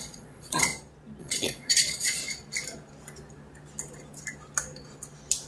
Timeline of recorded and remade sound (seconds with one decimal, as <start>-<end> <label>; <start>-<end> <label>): 0.0-0.7 remade; 0.7-1.2 recorded; 1.2-2.2 remade; 2.2-5.5 recorded